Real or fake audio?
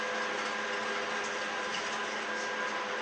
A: real